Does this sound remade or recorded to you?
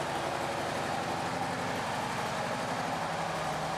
recorded